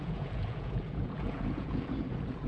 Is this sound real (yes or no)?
no